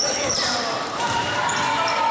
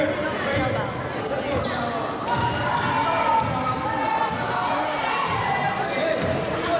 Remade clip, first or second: first